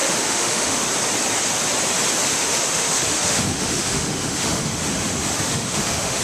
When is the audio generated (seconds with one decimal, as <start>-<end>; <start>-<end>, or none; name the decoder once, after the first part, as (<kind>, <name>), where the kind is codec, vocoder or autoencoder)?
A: 0.0-0.9 (autoencoder, DAC-VAE); 2.3-6.2